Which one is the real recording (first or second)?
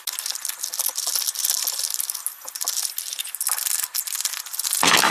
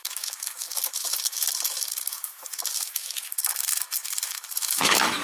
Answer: first